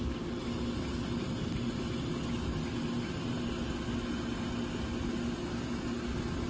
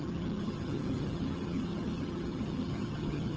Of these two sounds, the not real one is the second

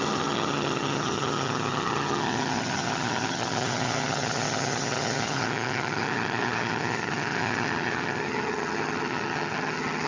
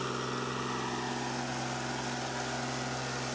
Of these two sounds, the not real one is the first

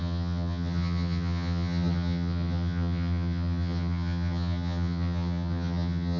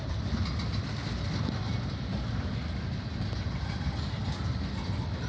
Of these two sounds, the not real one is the first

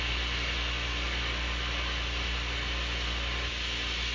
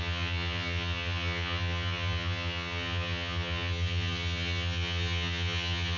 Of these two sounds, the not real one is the second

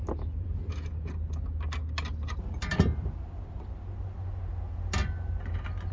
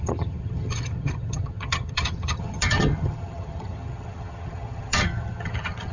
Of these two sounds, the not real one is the second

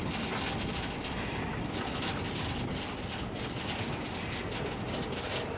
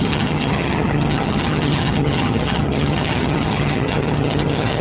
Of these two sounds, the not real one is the second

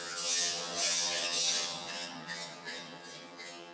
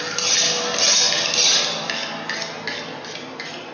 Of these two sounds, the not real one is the first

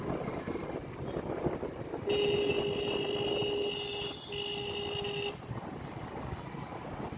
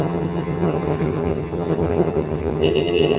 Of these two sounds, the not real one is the second